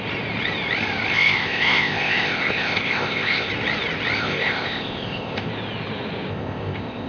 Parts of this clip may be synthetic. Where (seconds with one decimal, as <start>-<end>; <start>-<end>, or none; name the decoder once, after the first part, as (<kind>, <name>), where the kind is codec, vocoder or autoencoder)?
1.1-3.5 (codec, ZipCodec); 4.2-5.5; 6.3-7.1